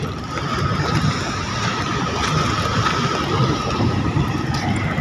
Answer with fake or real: real